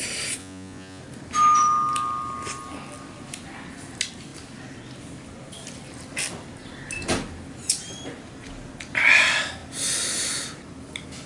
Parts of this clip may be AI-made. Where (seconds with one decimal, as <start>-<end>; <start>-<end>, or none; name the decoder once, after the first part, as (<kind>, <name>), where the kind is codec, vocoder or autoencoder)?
0.4-1.0 (vocoder, Vocos)